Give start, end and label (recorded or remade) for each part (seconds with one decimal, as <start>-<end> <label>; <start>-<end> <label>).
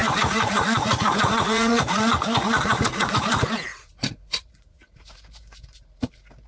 0.0-3.3 remade; 3.3-3.7 recorded; 3.7-5.2 remade; 5.2-6.5 recorded